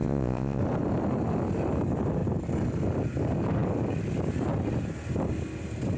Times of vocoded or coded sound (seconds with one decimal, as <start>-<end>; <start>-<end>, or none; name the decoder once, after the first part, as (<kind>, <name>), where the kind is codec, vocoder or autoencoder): 0.0-0.6 (vocoder, Vocos)

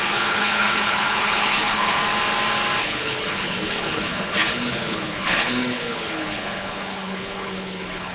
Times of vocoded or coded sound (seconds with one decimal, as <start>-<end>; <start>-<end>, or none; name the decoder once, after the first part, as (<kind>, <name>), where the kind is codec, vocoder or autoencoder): 0.0-2.0 (codec, HILCodec); 2.8-8.1